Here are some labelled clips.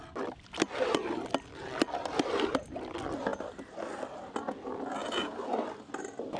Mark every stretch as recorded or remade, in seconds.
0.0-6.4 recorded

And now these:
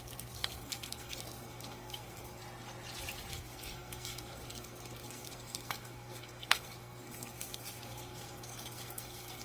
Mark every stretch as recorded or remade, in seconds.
0.0-2.4 remade; 2.4-3.3 recorded; 3.3-9.4 remade

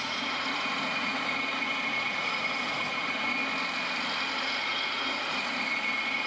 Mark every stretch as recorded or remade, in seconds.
0.0-3.4 remade; 3.4-4.4 recorded; 4.4-6.3 remade

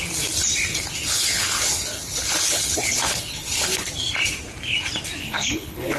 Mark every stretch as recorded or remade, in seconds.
0.0-0.7 recorded; 0.7-3.9 remade; 3.9-5.2 recorded; 5.2-6.0 remade

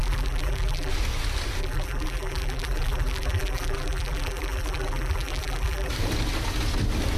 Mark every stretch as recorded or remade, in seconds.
0.0-0.9 remade; 0.9-1.6 recorded; 1.6-5.9 remade; 5.9-7.2 recorded

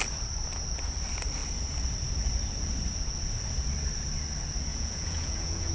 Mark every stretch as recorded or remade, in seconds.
0.0-4.7 recorded; 4.7-5.7 remade